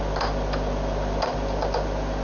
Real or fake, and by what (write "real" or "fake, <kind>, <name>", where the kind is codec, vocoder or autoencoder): real